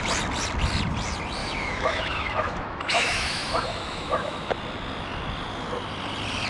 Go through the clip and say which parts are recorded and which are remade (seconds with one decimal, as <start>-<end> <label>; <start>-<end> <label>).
0.0-1.4 recorded; 1.4-4.5 remade; 4.5-6.5 recorded